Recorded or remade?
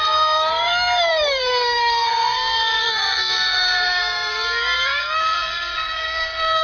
remade